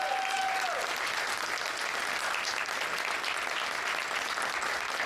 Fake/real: real